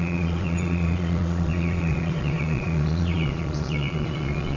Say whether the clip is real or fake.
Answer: fake